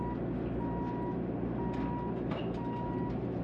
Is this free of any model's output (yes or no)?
yes